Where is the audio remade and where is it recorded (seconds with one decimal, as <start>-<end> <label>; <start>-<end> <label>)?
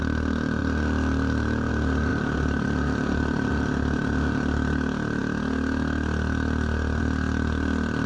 0.0-0.6 recorded; 0.6-1.7 remade; 1.7-2.1 recorded; 2.1-3.5 remade; 3.5-8.1 recorded